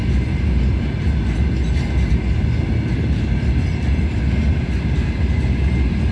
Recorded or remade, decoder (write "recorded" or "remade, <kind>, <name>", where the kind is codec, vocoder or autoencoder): recorded